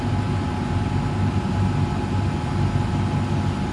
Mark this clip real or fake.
real